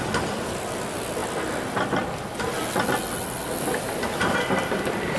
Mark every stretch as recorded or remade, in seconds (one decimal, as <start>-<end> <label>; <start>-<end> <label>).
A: 0.0-5.2 recorded